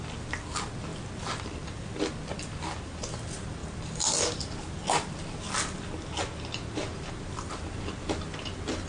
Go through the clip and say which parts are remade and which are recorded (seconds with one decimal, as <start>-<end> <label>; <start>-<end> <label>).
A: 0.0-8.9 recorded